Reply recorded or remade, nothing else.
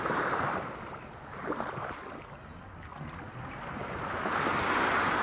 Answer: recorded